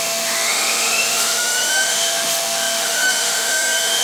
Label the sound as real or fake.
fake